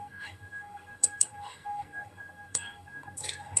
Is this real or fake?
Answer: fake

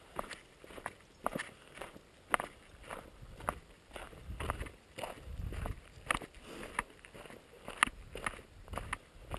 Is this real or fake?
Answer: real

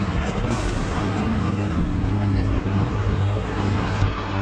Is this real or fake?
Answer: fake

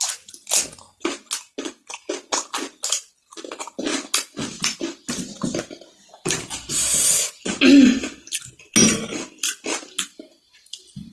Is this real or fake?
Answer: real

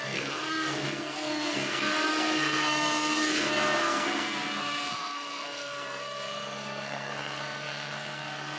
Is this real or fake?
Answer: fake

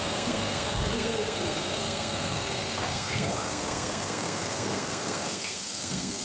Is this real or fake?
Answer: fake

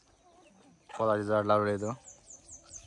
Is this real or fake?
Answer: real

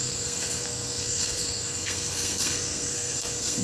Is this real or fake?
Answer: fake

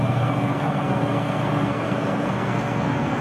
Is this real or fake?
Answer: fake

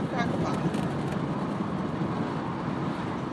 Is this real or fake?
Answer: real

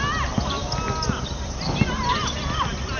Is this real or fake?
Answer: real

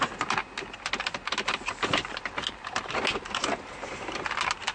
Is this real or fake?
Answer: real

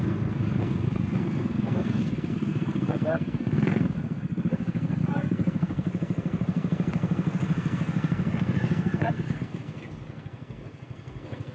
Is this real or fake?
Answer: fake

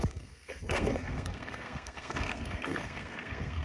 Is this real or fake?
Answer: fake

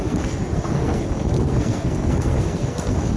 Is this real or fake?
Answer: fake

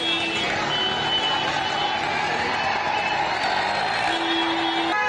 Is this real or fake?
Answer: real